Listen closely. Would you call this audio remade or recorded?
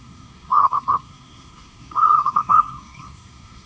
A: remade